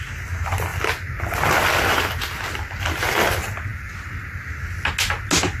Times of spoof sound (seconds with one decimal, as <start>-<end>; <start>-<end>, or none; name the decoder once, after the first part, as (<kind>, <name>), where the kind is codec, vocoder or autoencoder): none